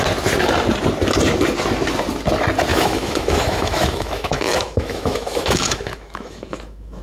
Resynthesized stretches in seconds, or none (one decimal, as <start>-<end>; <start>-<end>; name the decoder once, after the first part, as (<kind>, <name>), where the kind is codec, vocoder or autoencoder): 2.7-7.0 (autoencoder, DAC-VAE)